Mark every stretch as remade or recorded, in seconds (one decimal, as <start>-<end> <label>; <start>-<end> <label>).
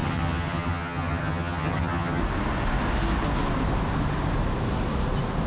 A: 0.0-2.2 remade; 2.2-5.5 recorded